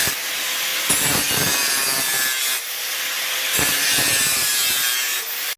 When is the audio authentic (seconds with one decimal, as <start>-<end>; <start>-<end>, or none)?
0.7-2.7; 4.5-5.6